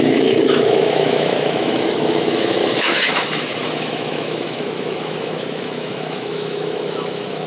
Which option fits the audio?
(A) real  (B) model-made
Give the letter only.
B